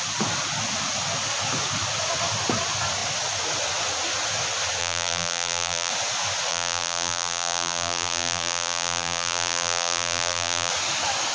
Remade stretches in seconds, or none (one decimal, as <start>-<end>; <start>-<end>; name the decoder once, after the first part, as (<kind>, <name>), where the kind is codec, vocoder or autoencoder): 4.8-5.9 (vocoder, BigVGAN v2); 6.5-10.7